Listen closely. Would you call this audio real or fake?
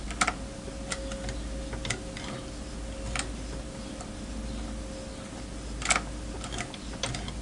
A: real